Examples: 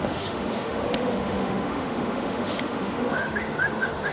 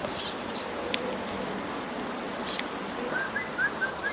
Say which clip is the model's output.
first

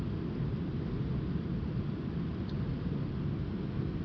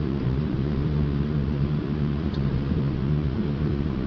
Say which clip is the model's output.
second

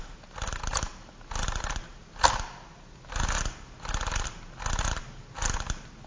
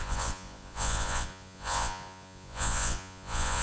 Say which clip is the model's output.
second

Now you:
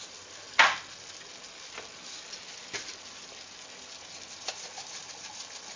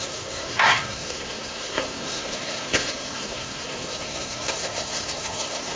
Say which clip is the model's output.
second